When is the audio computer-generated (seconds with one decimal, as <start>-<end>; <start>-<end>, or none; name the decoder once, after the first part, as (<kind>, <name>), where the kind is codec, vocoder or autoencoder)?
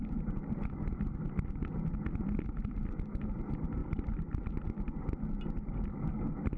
3.8-4.7 (vocoder, BigVGAN v2)